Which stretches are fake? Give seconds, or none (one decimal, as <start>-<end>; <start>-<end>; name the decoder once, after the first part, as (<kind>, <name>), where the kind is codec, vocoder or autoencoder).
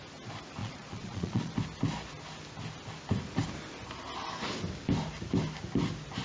0.6-1.5 (vocoder, Vocos)